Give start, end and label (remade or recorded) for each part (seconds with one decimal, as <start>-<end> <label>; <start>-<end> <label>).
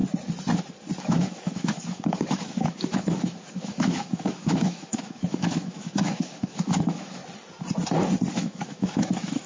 0.0-1.0 recorded; 1.0-7.2 remade; 7.2-8.3 recorded; 8.3-9.5 remade